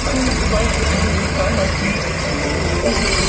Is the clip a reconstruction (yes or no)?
no